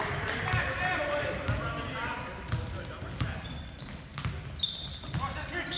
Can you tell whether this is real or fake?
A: real